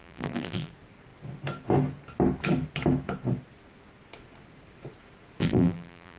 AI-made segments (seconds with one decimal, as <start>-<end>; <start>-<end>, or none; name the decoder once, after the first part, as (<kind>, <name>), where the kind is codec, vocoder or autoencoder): 0.0-0.7 (vocoder, BigVGAN v2); 5.4-6.2